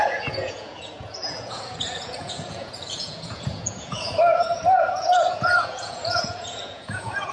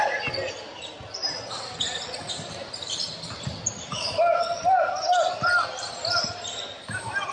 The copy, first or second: first